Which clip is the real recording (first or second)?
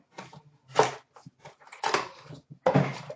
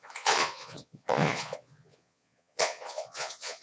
first